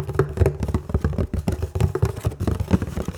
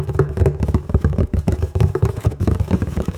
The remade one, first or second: second